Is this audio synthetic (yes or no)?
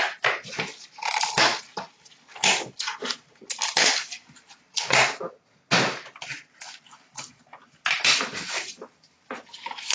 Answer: no